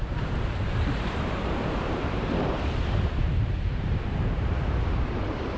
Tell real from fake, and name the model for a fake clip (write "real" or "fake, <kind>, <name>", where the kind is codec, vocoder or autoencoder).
fake, vocoder, BigVGAN v2